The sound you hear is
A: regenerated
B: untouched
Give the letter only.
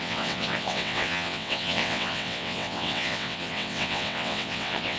A